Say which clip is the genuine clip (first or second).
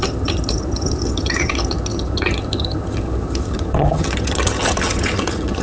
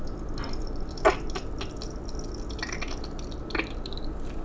second